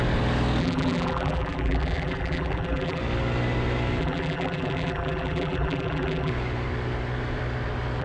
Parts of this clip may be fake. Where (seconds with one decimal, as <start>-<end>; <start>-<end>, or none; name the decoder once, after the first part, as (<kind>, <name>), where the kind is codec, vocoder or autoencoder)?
0.6-3.0 (vocoder, BigVGAN v2); 4.0-6.3